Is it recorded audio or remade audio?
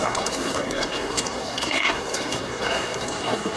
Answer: remade